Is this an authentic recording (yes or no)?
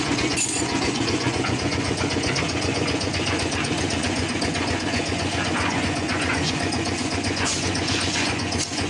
no